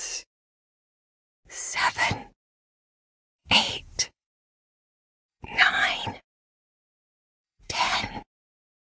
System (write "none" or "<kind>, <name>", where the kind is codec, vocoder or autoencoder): none